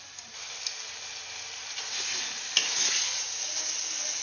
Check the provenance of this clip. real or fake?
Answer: real